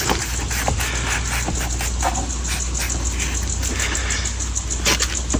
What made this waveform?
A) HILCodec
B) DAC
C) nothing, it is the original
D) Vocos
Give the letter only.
C